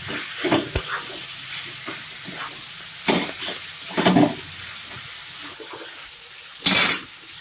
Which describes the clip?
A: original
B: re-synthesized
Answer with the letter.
A